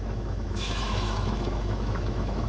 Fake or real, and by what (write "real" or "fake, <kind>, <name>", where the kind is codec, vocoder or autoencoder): fake, autoencoder, DAC-VAE